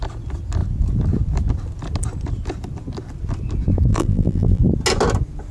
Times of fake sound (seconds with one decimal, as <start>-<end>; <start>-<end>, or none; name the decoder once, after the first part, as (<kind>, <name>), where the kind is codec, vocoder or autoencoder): 3.9-4.6 (vocoder, BigVGAN v2)